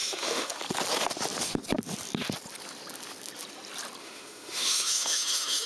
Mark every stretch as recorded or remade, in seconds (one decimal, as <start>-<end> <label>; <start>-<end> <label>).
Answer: 0.0-0.6 remade; 0.6-4.0 recorded; 4.0-5.7 remade